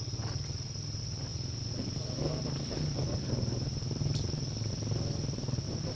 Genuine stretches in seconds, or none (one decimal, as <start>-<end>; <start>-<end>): 0.0-6.0